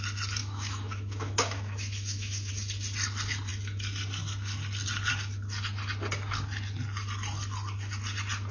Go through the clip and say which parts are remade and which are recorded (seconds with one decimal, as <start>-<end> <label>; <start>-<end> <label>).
0.0-0.4 recorded; 0.4-2.5 remade; 2.5-8.5 recorded